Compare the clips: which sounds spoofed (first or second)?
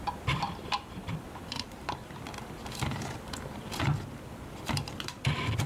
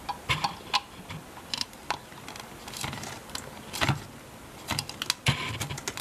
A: first